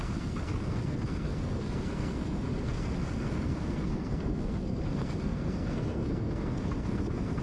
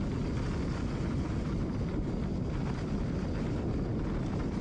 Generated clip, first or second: first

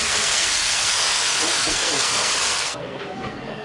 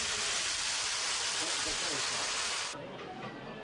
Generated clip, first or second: first